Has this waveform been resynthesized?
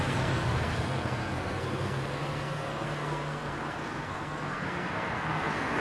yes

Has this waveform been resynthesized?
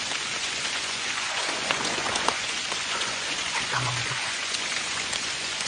yes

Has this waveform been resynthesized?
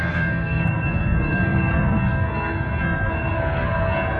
yes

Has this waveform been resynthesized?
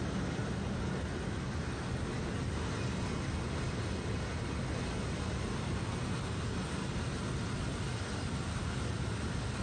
no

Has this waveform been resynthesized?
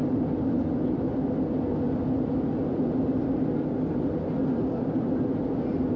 no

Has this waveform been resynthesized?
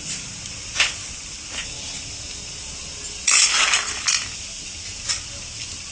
no